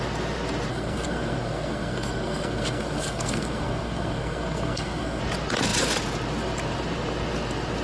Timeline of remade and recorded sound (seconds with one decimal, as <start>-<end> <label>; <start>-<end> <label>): 0.0-0.7 recorded; 0.7-5.2 remade; 5.2-7.8 recorded

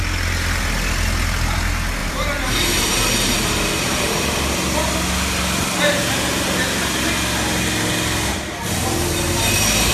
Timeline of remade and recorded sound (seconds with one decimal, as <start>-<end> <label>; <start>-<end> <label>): 0.0-2.0 recorded; 2.0-4.1 remade; 4.1-9.9 recorded

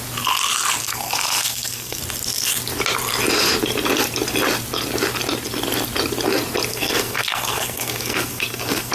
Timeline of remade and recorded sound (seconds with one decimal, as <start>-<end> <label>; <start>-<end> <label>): 0.0-0.8 recorded; 0.8-2.0 remade; 2.0-6.7 recorded; 6.7-8.9 remade

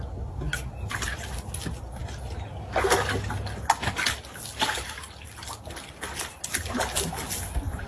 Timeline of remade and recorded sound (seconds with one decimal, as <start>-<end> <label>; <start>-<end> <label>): 0.0-7.9 recorded

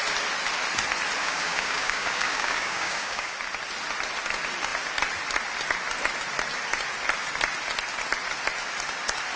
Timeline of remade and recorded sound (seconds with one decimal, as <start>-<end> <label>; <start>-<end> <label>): 0.0-1.2 recorded; 1.2-3.3 remade; 3.3-9.4 recorded

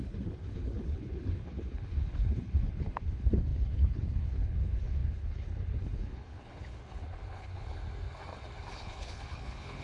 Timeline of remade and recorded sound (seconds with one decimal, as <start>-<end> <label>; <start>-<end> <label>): 0.0-7.8 remade; 7.8-8.7 recorded; 8.7-9.8 remade

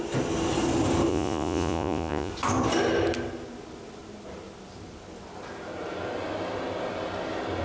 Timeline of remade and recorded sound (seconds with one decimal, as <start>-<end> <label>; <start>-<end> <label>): 0.0-1.1 recorded; 1.1-2.3 remade; 2.3-7.6 recorded

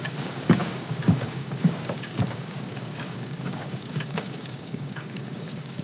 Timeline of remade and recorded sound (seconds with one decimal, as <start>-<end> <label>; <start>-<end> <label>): 0.0-5.8 remade